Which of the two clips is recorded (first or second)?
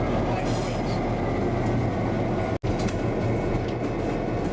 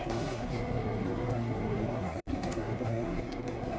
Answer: first